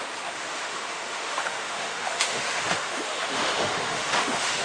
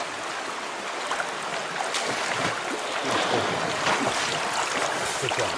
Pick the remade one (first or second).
first